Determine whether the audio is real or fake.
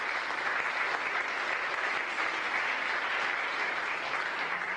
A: real